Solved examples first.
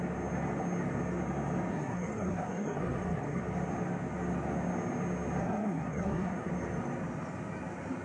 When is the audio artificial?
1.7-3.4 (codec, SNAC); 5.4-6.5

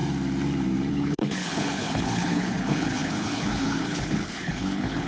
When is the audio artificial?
0.9-5.1 (codec, HILCodec)

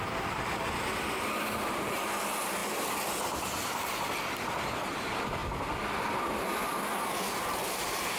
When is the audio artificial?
0.0-8.2 (vocoder, BigVGAN v2)

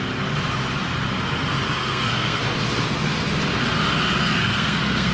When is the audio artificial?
1.8-2.4 (codec, SNAC); 4.2-5.1

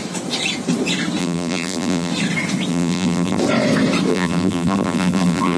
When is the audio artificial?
1.2-2.1 (vocoder, BigVGAN v2); 2.7-3.4; 4.1-5.6

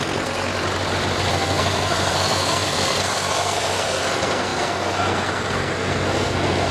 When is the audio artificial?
0.0-0.5 (codec, SNAC); 1.3-6.7

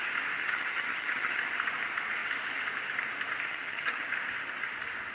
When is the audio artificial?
0.4-1.5 (vocoder, HiFi-GAN); 3.5-4.1